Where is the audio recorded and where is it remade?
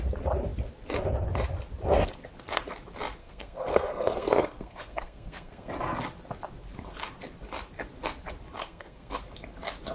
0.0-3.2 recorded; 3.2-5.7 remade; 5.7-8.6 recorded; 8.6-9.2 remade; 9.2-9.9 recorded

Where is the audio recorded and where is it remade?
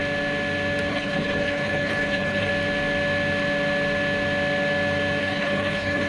0.0-0.9 recorded; 0.9-2.5 remade; 2.5-5.2 recorded; 5.2-6.1 remade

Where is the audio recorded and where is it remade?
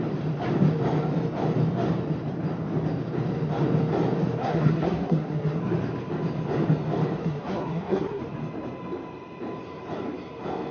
0.0-4.4 recorded; 4.4-5.6 remade; 5.6-7.2 recorded; 7.2-8.2 remade; 8.2-10.7 recorded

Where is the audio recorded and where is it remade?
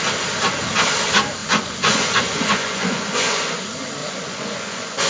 0.0-1.4 recorded; 1.4-3.6 remade; 3.6-4.0 recorded; 4.0-5.1 remade